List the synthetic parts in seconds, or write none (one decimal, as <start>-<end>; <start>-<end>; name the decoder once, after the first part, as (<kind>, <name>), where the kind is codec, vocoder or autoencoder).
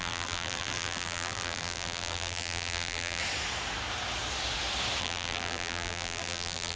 0.0-3.2 (vocoder, BigVGAN v2); 5.0-6.8